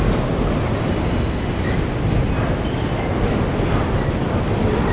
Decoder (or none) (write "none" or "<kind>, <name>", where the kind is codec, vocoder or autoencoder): none